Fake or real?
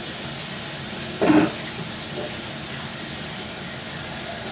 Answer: real